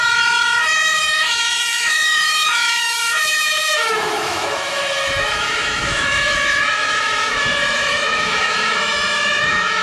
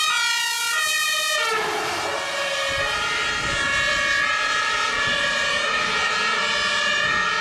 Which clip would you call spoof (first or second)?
first